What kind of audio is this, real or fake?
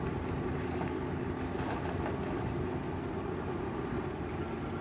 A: real